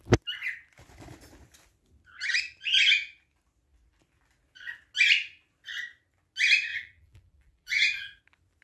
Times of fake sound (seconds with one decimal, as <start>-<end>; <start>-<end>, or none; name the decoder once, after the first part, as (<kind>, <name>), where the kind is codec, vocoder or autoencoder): 6.7-8.2 (vocoder, BigVGAN v2)